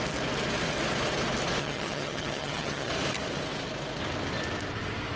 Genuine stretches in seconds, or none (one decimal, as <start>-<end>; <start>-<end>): 0.0-1.6; 2.9-5.2